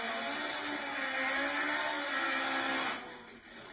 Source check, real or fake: real